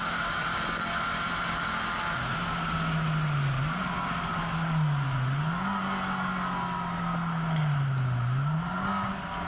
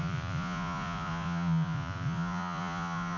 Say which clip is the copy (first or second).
second